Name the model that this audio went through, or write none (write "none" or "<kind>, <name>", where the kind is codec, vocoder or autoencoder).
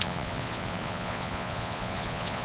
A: vocoder, Vocos